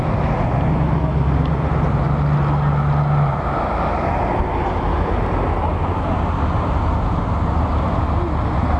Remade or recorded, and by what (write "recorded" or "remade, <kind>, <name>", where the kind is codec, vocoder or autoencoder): recorded